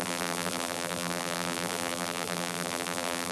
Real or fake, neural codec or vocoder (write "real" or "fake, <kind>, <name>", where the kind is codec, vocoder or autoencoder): fake, vocoder, BigVGAN v2